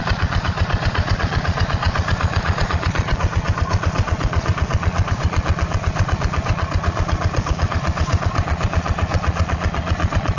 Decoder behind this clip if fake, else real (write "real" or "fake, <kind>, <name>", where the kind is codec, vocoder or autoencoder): fake, vocoder, Vocos